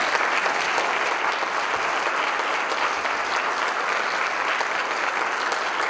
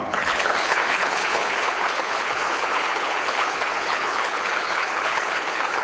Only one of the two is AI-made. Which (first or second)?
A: second